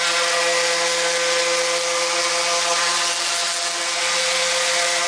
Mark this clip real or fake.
real